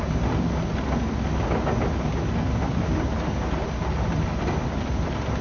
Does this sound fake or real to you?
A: real